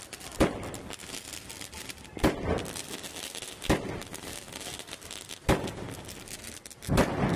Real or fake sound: real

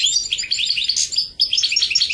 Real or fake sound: real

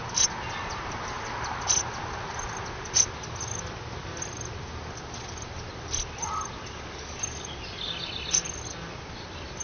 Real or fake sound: real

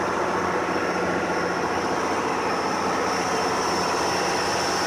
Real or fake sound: real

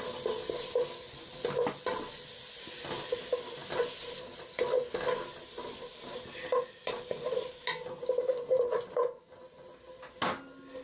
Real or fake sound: real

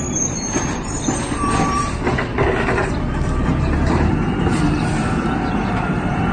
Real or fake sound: fake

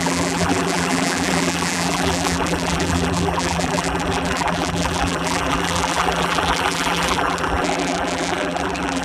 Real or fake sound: fake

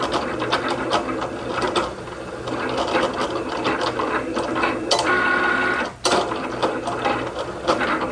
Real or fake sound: real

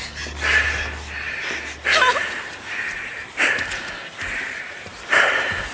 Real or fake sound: real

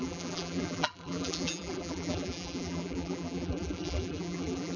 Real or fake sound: fake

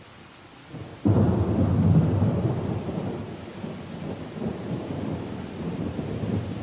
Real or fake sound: real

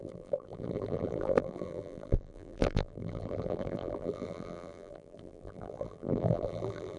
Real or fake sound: fake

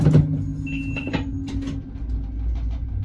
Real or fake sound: real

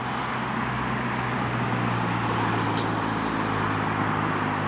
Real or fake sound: real